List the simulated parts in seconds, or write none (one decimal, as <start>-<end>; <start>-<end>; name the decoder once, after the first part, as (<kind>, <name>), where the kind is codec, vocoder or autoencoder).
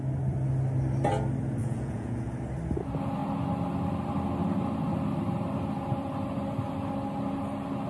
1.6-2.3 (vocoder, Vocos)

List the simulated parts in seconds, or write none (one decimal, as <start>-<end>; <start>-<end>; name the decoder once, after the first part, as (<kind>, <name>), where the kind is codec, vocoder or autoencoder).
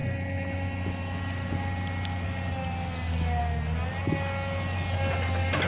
none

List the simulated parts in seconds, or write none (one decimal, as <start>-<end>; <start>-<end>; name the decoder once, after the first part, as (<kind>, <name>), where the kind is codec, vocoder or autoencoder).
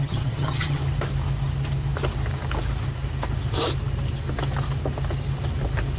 0.0-0.8 (vocoder, HiFi-GAN)